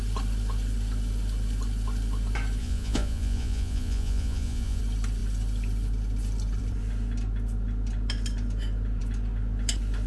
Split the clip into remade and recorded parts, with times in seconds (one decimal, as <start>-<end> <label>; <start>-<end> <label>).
0.0-2.6 recorded; 2.6-4.8 remade; 4.8-10.1 recorded